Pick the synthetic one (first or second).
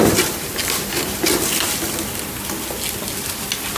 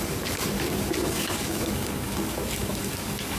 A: second